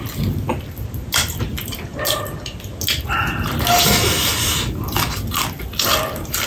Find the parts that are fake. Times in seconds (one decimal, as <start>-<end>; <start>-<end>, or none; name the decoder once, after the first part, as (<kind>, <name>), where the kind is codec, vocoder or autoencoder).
none